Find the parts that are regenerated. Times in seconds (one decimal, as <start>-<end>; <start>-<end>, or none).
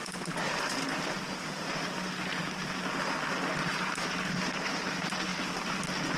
1.2-2.4; 3.7-5.3